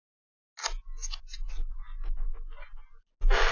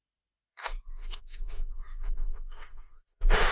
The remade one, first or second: second